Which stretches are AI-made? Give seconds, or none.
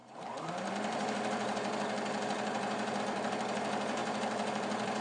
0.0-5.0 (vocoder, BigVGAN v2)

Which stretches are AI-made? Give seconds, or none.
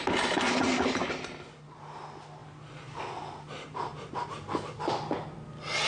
none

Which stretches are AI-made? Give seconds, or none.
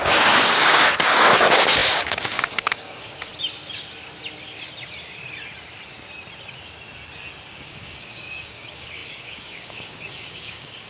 0.0-3.3 (codec, DAC); 7.5-10.9